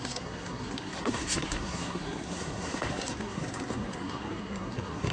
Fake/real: fake